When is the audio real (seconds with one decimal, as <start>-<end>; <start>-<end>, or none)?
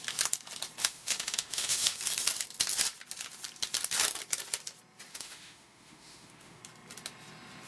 0.0-0.8; 2.0-5.1; 6.6-7.7